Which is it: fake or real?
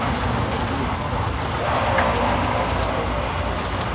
real